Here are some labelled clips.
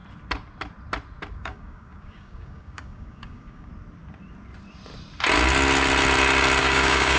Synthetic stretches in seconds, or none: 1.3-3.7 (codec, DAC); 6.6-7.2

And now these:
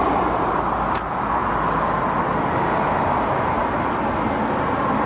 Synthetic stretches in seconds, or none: none